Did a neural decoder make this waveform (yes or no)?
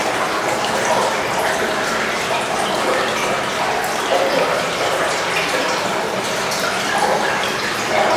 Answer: no